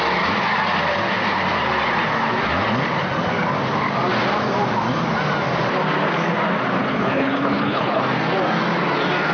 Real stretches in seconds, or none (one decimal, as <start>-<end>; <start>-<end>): 0.0-6.8; 8.0-9.3